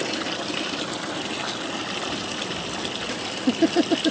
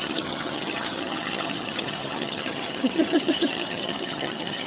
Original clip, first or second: first